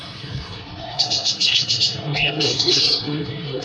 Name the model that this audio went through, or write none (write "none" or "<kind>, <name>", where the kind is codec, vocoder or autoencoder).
codec, SNAC